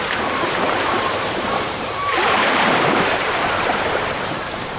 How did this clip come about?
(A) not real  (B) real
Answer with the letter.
A